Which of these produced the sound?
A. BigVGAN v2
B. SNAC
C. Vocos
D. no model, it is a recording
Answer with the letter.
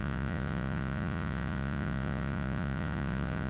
C